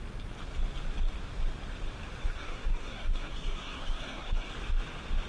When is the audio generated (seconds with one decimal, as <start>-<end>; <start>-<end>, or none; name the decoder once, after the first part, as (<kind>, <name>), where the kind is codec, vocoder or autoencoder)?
2.2-4.5 (codec, SNAC)